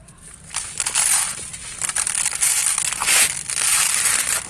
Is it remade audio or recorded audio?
recorded